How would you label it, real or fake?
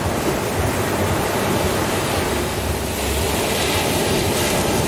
real